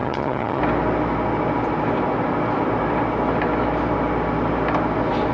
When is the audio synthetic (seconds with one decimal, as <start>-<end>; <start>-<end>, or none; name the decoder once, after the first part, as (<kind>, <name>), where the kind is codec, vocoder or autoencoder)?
0.0-0.6 (vocoder, HiFi-GAN)